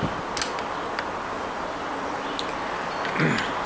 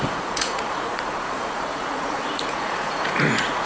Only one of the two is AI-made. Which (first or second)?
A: second